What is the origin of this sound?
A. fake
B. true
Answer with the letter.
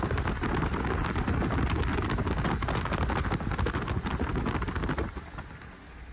B